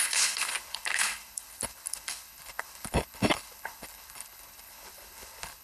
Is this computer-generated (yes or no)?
yes